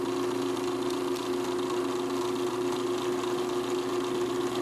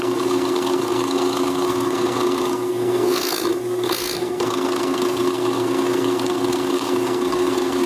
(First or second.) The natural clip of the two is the first